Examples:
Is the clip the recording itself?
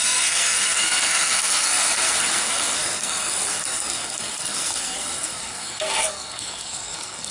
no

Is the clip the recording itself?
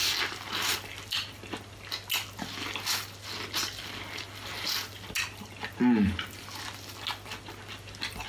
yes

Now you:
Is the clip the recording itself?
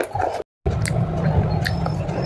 yes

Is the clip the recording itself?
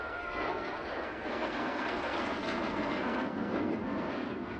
no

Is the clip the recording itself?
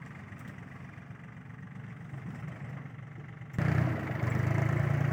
yes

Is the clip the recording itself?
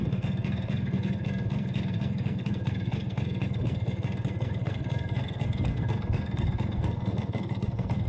no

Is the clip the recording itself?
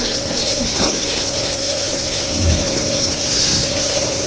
no